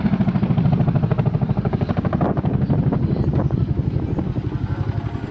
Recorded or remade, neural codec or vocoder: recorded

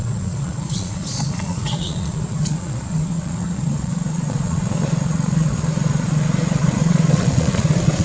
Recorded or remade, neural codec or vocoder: remade, vocoder, Vocos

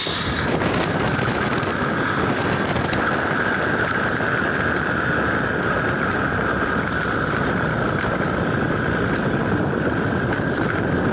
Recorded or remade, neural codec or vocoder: remade, vocoder, BigVGAN v2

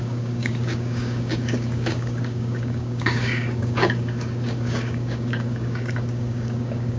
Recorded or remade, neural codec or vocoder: remade, codec, DAC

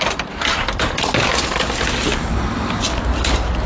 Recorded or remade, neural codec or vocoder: recorded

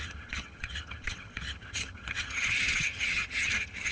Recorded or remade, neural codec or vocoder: remade, vocoder, HiFi-GAN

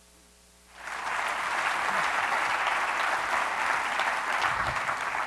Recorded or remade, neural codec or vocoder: recorded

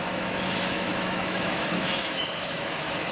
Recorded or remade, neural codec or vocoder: remade, autoencoder, DAC-VAE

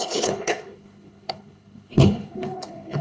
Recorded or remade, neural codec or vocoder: remade, codec, HILCodec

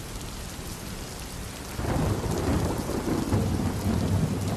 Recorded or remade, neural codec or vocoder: recorded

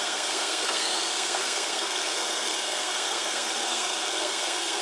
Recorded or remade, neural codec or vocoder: remade, codec, SNAC